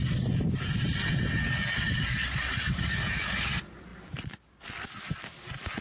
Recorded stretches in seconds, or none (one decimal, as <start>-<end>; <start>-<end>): 0.0-5.8